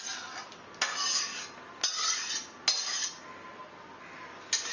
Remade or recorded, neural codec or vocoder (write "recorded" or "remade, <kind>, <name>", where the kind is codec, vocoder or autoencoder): recorded